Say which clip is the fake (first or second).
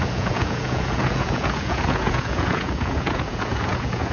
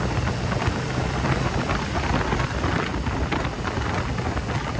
first